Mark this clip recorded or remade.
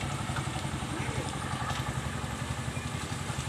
recorded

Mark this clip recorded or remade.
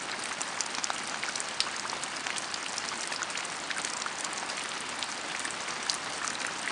recorded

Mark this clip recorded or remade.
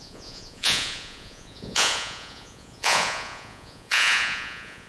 remade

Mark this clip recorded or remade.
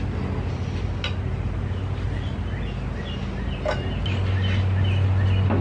recorded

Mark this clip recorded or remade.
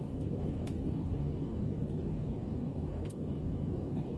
remade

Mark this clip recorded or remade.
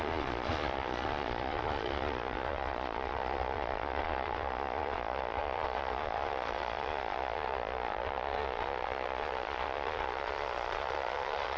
remade